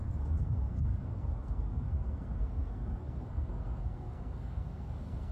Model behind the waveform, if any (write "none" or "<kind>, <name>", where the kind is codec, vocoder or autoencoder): codec, SNAC